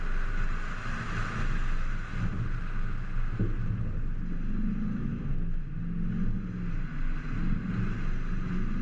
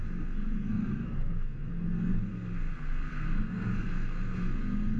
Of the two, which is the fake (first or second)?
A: second